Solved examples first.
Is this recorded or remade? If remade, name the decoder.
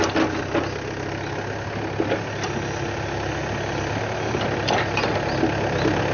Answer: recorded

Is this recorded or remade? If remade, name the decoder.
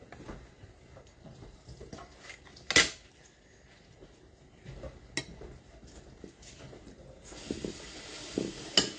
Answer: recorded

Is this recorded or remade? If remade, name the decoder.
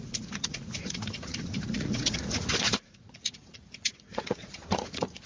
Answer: remade, vocoder, Vocos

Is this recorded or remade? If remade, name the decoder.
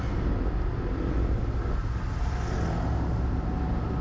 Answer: recorded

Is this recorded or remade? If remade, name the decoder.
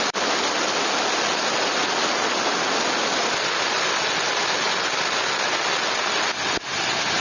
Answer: recorded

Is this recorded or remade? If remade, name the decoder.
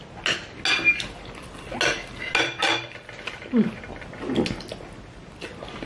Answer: recorded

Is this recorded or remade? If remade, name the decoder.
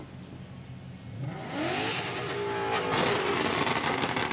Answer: recorded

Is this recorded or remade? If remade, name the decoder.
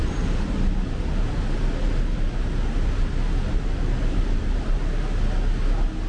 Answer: recorded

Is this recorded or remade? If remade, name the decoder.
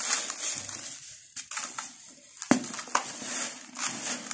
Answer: recorded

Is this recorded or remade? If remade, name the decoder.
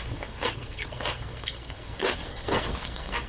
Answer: remade, codec, SNAC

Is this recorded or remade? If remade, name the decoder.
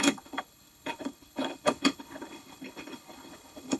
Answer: remade, codec, HILCodec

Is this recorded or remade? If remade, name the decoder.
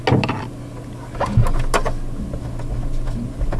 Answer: recorded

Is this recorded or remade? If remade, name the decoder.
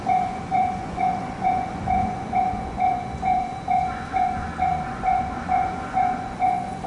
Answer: remade, vocoder, Vocos